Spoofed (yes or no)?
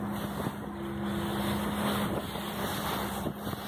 no